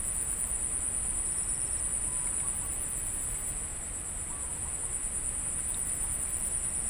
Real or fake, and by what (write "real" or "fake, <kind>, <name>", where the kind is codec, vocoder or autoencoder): real